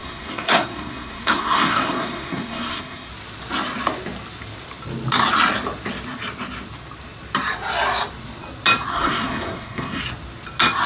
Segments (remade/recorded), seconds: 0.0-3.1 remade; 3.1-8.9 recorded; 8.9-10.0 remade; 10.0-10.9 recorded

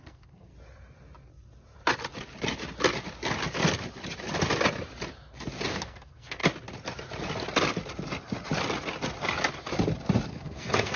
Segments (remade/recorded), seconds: 0.0-0.5 remade; 0.5-5.7 recorded; 5.7-6.4 remade; 6.4-10.3 recorded; 10.3-11.0 remade

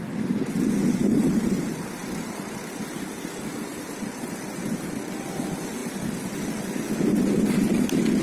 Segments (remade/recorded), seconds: 0.0-1.0 recorded; 1.0-1.6 remade; 1.6-3.7 recorded; 3.7-4.4 remade; 4.4-8.2 recorded

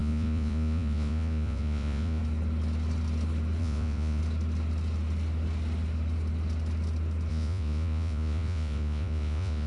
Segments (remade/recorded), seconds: 0.0-2.2 remade; 2.2-3.6 recorded; 3.6-4.2 remade; 4.2-7.3 recorded; 7.3-9.7 remade

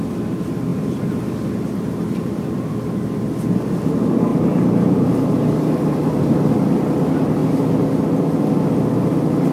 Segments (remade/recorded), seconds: 0.0-0.7 recorded; 0.7-2.7 remade; 2.7-4.3 recorded; 4.3-6.2 remade; 6.2-7.4 recorded; 7.4-8.4 remade; 8.4-9.5 recorded